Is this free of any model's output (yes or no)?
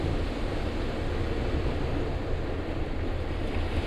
yes